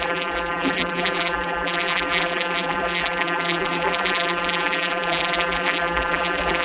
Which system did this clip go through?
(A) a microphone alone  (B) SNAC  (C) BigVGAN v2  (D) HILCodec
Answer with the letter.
C